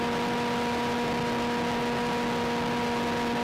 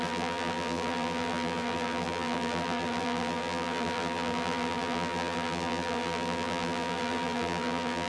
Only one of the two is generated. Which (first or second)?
second